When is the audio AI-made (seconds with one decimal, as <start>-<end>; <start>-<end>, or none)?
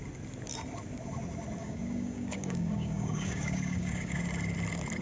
1.6-4.2